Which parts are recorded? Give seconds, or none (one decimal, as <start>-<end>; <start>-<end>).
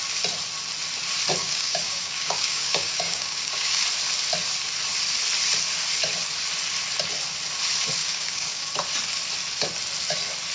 0.0-1.4; 3.8-8.0; 8.7-10.5